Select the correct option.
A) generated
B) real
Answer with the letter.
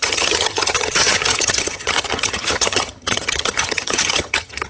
A